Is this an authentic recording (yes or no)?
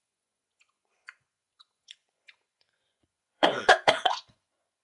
no